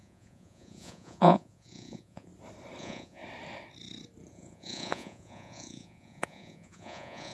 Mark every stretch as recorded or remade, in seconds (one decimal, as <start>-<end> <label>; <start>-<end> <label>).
0.0-2.3 remade; 2.3-2.8 recorded; 2.8-3.2 remade; 3.2-4.3 recorded; 4.3-7.3 remade